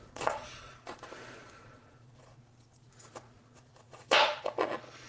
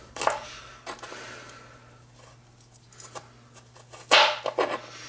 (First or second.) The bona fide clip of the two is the second